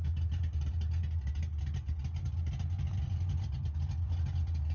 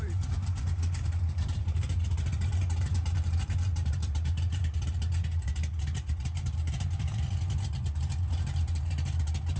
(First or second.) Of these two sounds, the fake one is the second